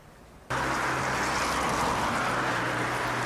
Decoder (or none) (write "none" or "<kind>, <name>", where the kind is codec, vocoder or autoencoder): none